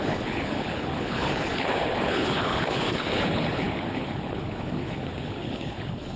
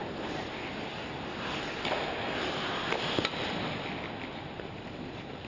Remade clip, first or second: first